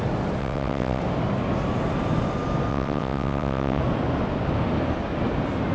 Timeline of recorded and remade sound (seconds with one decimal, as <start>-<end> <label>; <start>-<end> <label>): 0.0-0.4 recorded; 0.4-1.0 remade; 1.0-2.7 recorded; 2.7-3.8 remade; 3.8-5.7 recorded